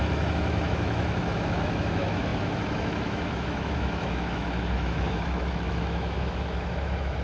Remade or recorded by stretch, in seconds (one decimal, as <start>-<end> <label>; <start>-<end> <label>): 0.0-7.2 remade